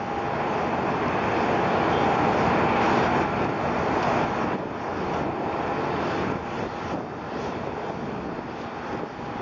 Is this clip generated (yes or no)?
no